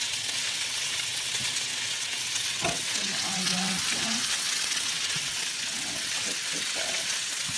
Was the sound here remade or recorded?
remade